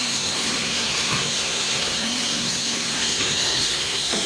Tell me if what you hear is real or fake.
fake